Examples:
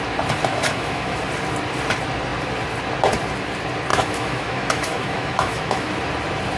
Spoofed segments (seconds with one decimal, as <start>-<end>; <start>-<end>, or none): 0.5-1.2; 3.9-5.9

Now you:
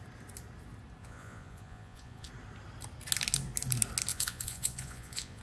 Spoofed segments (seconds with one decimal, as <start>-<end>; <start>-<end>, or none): 1.0-2.3; 4.1-5.4

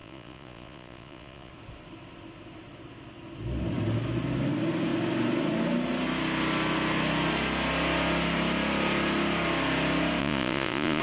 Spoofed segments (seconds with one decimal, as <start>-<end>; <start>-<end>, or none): 0.0-1.5; 10.2-11.0